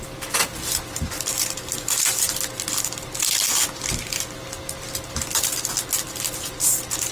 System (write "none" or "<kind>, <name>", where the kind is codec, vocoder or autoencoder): none